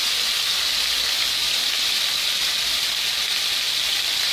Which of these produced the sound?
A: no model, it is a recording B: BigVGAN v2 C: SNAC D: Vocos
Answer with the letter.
A